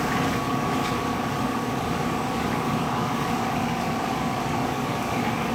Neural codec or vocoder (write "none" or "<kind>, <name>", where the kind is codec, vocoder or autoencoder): codec, DAC